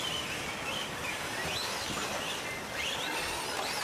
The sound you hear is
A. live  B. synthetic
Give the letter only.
A